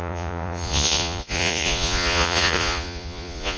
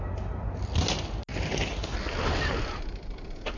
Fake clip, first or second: first